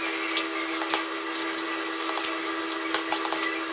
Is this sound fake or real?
real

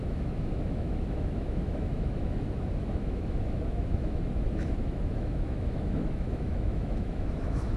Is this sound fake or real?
fake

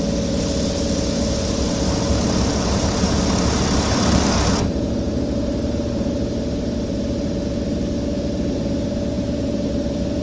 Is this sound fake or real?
fake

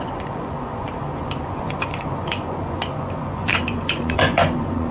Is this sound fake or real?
fake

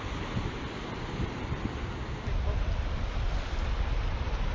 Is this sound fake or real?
real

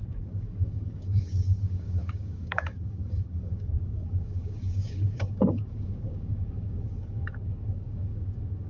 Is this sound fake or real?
fake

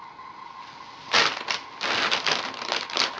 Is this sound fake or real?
real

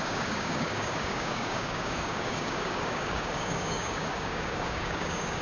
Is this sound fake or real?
fake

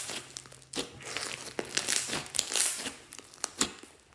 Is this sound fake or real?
real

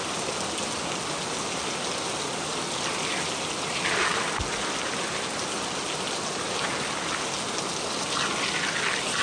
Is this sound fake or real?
real